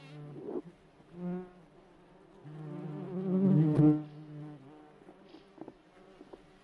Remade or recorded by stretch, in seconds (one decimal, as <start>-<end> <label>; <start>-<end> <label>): 0.0-6.6 recorded